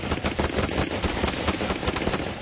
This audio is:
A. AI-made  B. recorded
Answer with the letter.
B